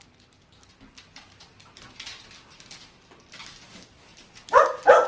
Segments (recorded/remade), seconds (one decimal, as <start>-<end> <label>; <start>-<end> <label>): 0.0-4.1 recorded; 4.1-5.1 remade

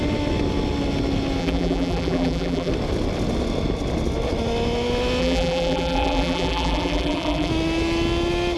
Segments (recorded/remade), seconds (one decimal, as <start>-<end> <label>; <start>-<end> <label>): 0.0-1.4 recorded; 1.4-2.7 remade; 2.7-5.2 recorded; 5.2-7.5 remade; 7.5-8.6 recorded

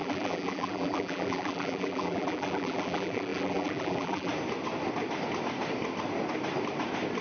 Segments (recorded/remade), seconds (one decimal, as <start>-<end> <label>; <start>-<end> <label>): 0.0-4.3 remade; 4.3-7.2 recorded

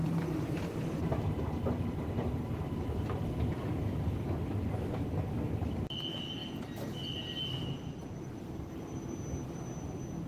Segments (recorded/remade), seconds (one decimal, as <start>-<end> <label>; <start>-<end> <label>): 0.0-3.1 remade; 3.1-8.0 recorded; 8.0-8.8 remade; 8.8-10.3 recorded

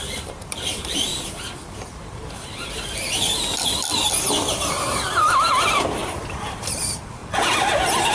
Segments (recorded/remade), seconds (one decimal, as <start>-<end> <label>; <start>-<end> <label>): 0.0-1.1 remade; 1.1-4.7 recorded; 4.7-7.2 remade; 7.2-8.1 recorded

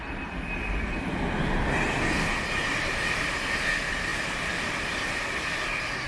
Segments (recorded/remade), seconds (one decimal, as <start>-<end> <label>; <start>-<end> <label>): 0.0-2.6 recorded; 2.6-3.5 remade; 3.5-6.1 recorded

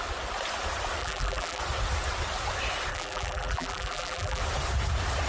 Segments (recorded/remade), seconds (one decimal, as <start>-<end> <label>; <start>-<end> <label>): 0.0-1.0 recorded; 1.0-1.6 remade; 1.6-2.9 recorded; 2.9-4.4 remade; 4.4-5.3 recorded

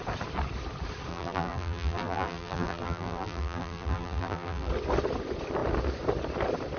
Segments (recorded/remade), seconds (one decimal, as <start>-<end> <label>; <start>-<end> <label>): 0.0-1.1 recorded; 1.1-4.7 remade; 4.7-6.8 recorded